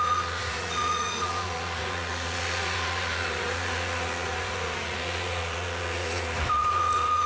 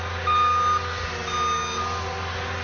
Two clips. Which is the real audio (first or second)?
second